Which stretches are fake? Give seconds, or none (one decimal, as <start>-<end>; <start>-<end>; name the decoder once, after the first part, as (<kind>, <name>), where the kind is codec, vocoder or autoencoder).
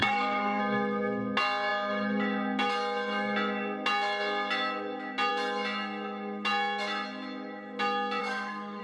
0.0-0.6 (codec, SNAC); 8.2-8.8